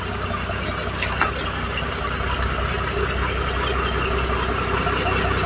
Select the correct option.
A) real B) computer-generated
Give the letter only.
A